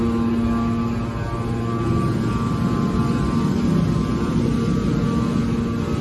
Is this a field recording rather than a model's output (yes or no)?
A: yes